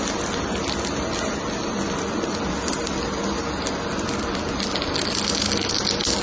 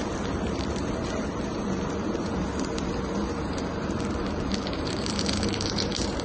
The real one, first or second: first